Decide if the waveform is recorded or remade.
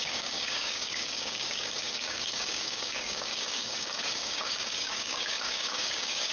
remade